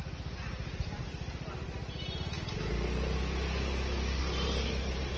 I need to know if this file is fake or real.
real